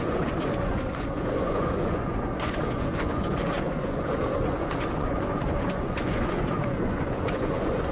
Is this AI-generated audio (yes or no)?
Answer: yes